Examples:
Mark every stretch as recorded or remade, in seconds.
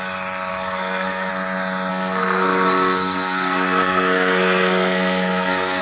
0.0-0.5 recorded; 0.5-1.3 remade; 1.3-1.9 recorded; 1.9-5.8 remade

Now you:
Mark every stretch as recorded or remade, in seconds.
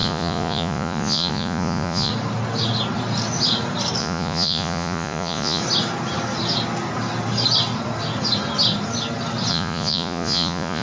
0.0-2.1 remade; 2.1-4.0 recorded; 4.0-5.6 remade; 5.6-9.5 recorded; 9.5-10.8 remade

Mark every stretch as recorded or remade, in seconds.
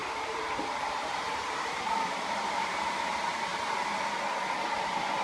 0.0-3.5 remade; 3.5-4.8 recorded; 4.8-5.2 remade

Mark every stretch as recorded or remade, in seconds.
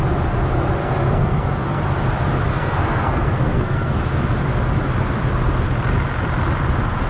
0.0-0.8 recorded; 0.8-1.8 remade; 1.8-2.5 recorded; 2.5-4.0 remade; 4.0-7.1 recorded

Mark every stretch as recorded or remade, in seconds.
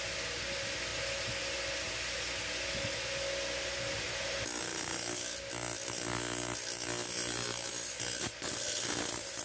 0.0-9.4 recorded